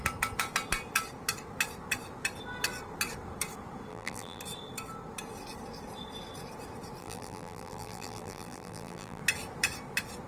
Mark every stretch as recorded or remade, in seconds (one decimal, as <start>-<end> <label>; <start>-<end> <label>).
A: 0.0-3.9 recorded; 3.9-4.4 remade; 4.4-7.0 recorded; 7.0-9.2 remade; 9.2-10.3 recorded

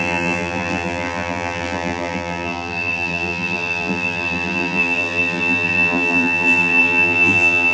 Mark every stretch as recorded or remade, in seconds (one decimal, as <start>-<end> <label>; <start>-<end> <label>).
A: 0.0-7.7 remade

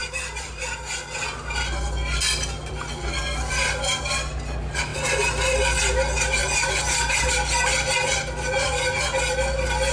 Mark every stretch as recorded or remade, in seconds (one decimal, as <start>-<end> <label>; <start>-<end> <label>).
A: 0.0-0.6 remade; 0.6-6.4 recorded; 6.4-7.3 remade; 7.3-9.9 recorded